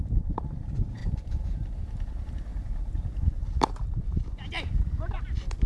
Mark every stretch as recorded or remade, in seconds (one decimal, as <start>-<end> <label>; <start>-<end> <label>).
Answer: 0.0-1.0 recorded; 1.0-1.8 remade; 1.8-5.7 recorded